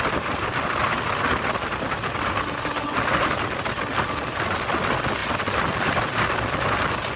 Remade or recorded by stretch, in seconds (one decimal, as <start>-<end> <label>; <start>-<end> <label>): 0.0-7.2 recorded